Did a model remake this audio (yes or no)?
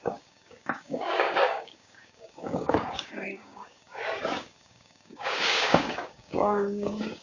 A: yes